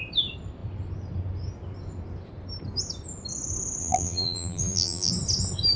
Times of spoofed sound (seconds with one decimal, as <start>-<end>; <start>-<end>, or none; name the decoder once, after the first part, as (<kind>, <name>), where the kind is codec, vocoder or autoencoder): 3.8-5.1 (vocoder, BigVGAN v2)